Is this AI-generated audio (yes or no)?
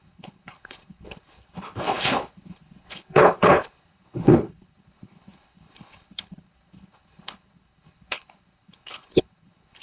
yes